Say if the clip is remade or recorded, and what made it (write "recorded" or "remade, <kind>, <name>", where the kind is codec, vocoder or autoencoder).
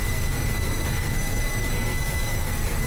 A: remade, codec, SNAC